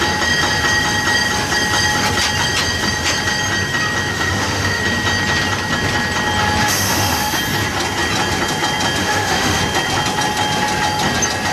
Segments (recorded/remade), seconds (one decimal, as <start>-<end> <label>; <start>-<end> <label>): 0.0-4.1 recorded; 4.1-4.8 remade; 4.8-6.6 recorded; 6.6-7.4 remade; 7.4-9.0 recorded; 9.0-9.6 remade; 9.6-11.5 recorded